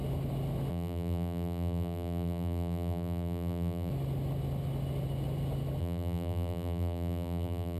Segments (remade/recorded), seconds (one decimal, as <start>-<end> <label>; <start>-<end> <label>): 0.0-0.7 recorded; 0.7-3.9 remade; 3.9-5.8 recorded; 5.8-7.8 remade

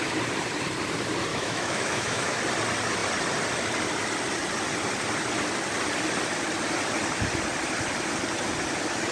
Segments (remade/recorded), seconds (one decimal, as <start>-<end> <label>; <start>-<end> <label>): 0.0-1.3 recorded; 1.3-2.4 remade; 2.4-9.1 recorded

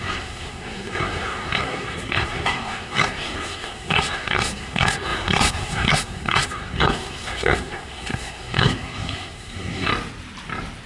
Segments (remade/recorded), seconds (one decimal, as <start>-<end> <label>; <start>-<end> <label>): 0.0-9.9 remade; 9.9-10.9 recorded

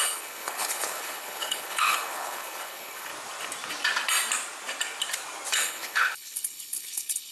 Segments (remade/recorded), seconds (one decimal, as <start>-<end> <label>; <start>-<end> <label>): 0.0-3.1 remade; 3.1-5.5 recorded; 5.5-7.3 remade

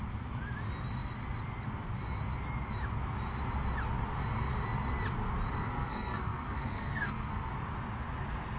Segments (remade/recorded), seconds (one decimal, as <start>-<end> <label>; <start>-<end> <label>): 0.0-5.6 recorded; 5.6-7.5 remade; 7.5-8.6 recorded

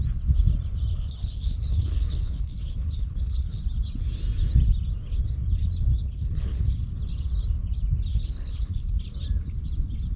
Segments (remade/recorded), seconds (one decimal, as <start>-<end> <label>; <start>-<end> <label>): 0.0-0.9 recorded; 0.9-3.6 remade; 3.6-5.9 recorded; 5.9-6.7 remade; 6.7-8.1 recorded; 8.1-9.0 remade; 9.0-10.2 recorded